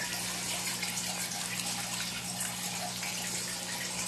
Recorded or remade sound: recorded